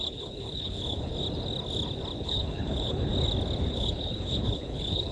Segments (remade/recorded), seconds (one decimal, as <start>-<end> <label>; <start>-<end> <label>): 0.0-1.1 remade; 1.1-2.2 recorded; 2.2-3.1 remade; 3.1-3.7 recorded; 3.7-5.1 remade